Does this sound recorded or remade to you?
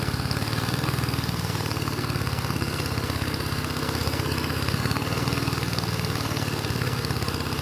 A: remade